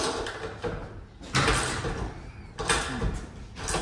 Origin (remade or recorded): recorded